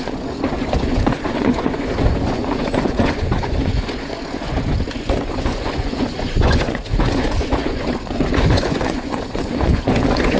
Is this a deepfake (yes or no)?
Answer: yes